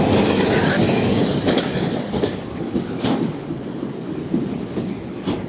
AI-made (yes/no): yes